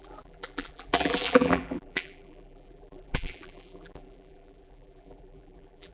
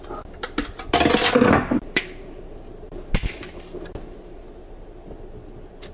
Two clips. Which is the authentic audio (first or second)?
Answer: second